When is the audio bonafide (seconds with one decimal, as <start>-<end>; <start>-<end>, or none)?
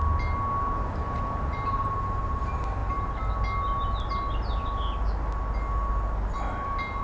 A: 0.0-7.0